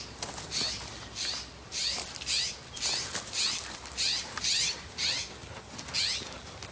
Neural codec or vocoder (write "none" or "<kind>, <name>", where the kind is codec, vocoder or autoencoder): none